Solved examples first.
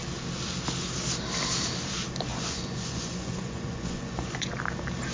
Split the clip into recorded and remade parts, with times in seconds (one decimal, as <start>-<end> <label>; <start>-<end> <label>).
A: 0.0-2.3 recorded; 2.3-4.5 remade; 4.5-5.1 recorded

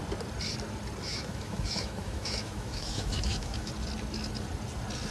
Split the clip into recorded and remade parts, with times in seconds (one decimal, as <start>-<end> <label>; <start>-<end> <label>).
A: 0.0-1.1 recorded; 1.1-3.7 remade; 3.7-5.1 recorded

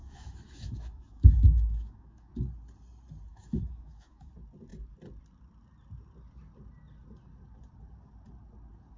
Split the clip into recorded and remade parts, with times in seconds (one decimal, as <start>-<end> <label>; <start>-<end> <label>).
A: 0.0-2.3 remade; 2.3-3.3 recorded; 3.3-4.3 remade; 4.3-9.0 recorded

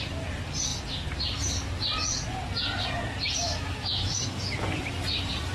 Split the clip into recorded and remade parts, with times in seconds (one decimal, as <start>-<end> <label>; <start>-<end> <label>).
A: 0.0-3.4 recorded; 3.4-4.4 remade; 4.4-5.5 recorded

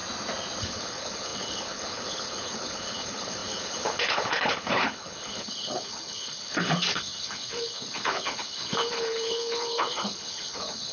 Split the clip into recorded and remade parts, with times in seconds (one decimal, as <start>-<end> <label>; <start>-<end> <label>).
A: 0.0-0.6 recorded; 0.6-10.9 remade

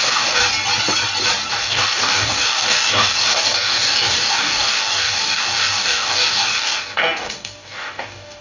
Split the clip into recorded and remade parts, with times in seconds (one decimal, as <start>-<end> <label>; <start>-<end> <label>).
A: 0.0-0.4 remade; 0.4-1.5 recorded; 1.5-8.4 remade